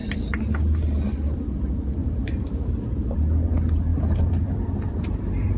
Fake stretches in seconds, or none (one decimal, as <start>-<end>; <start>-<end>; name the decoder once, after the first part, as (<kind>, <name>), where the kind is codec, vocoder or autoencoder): 2.0-3.1 (vocoder, BigVGAN v2); 3.9-5.6